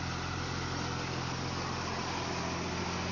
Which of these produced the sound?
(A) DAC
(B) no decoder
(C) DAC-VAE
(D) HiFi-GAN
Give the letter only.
B